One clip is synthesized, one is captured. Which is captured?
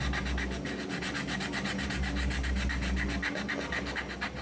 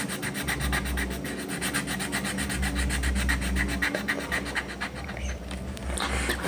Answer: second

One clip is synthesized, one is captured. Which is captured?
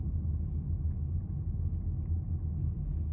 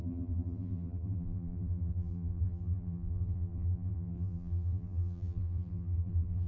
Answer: first